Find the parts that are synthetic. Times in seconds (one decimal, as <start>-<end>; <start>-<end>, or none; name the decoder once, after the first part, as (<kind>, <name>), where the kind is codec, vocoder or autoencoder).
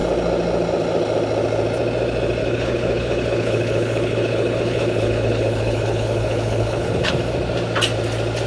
2.4-7.1 (codec, HILCodec)